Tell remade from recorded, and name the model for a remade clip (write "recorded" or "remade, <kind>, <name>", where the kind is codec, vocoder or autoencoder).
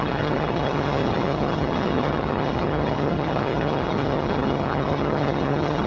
remade, vocoder, HiFi-GAN